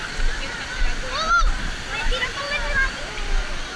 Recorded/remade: recorded